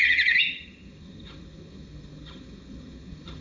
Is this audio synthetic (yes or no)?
yes